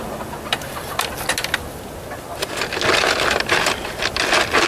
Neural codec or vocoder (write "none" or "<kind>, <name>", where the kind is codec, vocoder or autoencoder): none